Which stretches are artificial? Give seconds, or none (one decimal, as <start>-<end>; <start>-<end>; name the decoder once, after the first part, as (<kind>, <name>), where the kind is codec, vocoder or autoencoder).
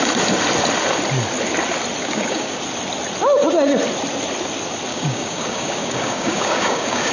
2.0-2.6 (codec, DAC); 4.9-7.1